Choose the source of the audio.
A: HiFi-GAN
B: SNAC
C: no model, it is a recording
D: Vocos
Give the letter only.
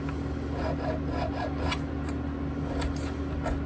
C